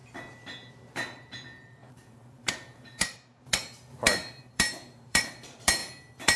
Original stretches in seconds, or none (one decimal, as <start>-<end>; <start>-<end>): 0.0-0.7; 5.8-6.4